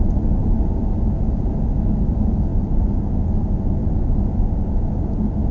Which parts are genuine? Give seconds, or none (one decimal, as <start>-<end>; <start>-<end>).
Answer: 0.0-5.5